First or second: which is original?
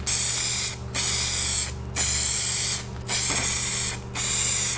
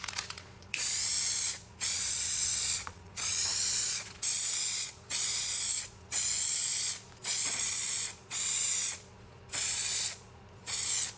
first